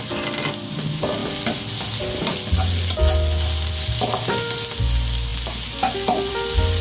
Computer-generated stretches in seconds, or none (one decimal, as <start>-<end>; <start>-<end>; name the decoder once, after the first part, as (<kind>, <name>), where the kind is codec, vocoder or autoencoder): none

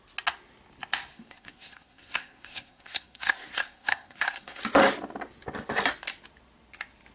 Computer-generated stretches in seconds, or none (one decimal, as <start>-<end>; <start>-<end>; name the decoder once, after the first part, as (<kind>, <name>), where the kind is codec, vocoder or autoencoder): 1.1-4.6 (codec, SNAC)

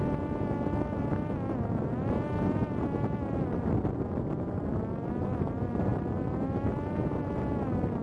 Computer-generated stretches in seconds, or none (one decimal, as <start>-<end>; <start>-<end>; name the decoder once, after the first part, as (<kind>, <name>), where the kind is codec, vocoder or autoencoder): none

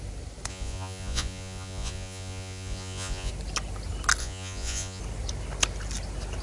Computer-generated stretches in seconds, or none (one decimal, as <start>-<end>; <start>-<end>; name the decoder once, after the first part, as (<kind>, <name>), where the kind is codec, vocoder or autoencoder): 0.5-3.3 (vocoder, Vocos); 4.2-5.0